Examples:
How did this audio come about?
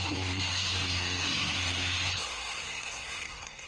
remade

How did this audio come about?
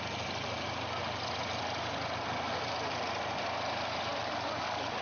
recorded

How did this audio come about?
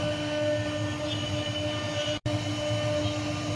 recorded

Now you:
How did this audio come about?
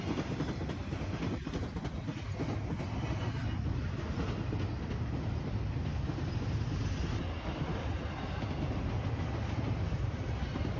recorded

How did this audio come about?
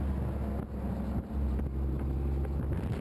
recorded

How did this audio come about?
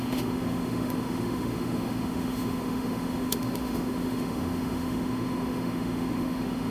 remade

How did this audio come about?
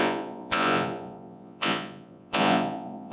remade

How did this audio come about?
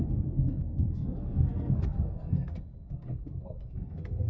remade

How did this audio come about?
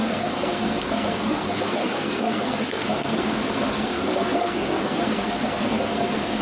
remade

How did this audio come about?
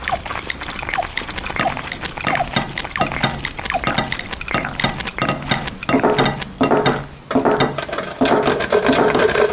recorded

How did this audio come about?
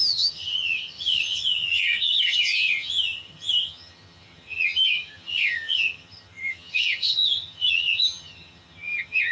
remade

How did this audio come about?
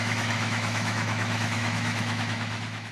remade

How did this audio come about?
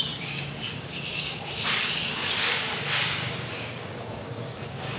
remade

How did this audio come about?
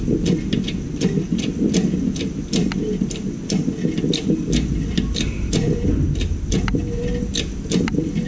recorded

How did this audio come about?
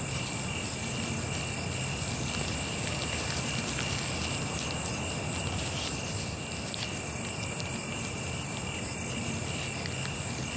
recorded